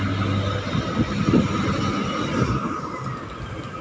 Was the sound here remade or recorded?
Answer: recorded